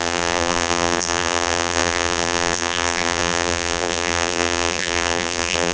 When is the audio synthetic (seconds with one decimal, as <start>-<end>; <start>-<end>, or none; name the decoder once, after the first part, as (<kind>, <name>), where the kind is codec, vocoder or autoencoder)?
0.0-5.7 (vocoder, BigVGAN v2)